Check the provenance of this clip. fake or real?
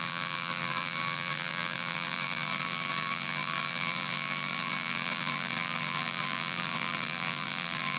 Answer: fake